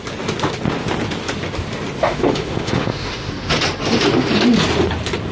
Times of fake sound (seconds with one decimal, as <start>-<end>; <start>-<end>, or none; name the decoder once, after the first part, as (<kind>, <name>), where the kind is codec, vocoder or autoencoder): 2.0-3.3 (autoencoder, DAC-VAE)